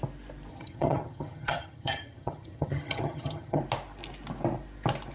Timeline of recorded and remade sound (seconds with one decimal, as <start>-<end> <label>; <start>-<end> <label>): 0.0-0.5 recorded; 0.5-3.6 remade; 3.6-5.1 recorded